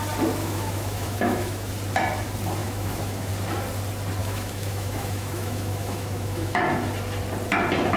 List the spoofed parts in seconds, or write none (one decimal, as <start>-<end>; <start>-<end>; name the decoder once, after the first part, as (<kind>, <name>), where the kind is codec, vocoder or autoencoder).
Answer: 0.4-1.7 (autoencoder, DAC-VAE); 2.6-3.3; 4.2-6.6